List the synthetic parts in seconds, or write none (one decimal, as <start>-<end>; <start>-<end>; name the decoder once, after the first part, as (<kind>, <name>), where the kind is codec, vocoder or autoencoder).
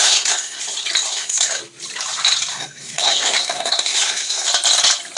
0.0-0.6 (codec, SNAC); 1.1-1.6; 2.5-4.5